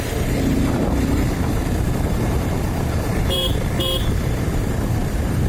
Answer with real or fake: fake